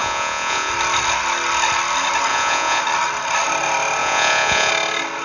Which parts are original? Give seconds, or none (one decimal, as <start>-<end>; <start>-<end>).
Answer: 0.7-2.3; 2.8-4.0; 4.7-5.2